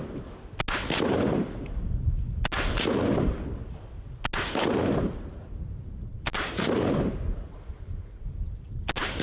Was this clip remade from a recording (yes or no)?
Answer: no